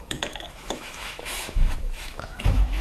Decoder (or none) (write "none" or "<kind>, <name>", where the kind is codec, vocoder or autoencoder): autoencoder, DAC-VAE